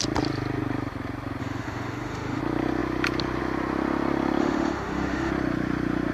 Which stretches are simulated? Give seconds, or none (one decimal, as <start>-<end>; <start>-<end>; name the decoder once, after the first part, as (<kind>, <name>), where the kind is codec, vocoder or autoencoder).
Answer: 1.4-2.4 (autoencoder, DAC-VAE); 4.4-5.3